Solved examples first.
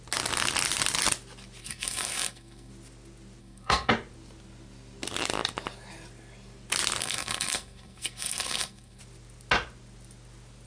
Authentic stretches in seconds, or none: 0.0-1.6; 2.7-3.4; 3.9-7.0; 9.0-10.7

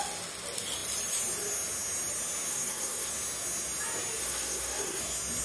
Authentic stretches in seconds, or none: 0.0-2.5; 3.1-4.2; 5.0-5.4

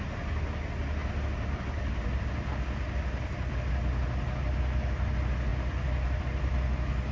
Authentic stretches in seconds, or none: 0.0-7.1

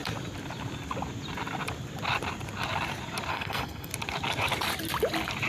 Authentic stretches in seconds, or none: 0.0-3.3; 3.9-5.5

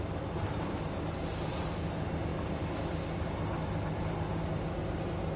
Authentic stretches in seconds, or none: 0.0-5.4